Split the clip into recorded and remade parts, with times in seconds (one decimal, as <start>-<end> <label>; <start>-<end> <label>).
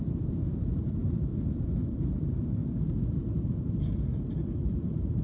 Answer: 0.0-2.6 remade; 2.6-3.3 recorded; 3.3-5.2 remade